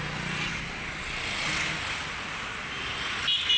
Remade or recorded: recorded